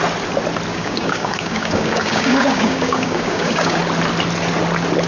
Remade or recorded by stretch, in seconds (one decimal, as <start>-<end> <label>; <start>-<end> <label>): 0.0-0.7 recorded; 0.7-3.8 remade; 3.8-5.1 recorded